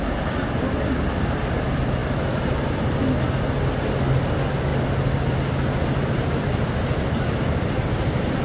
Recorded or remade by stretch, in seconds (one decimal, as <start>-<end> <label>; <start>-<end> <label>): 0.0-8.4 recorded